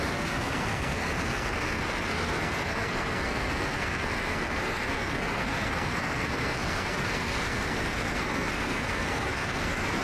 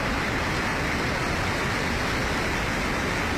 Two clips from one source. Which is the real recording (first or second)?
second